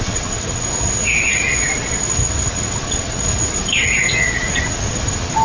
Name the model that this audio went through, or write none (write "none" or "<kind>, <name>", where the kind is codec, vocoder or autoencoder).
vocoder, WaveNeXt